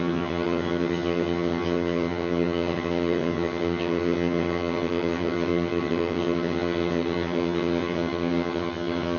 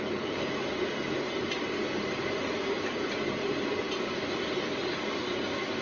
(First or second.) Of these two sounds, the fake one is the first